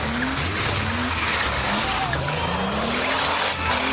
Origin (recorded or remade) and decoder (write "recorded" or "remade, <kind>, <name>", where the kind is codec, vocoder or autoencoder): recorded